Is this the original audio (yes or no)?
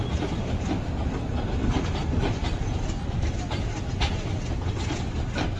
yes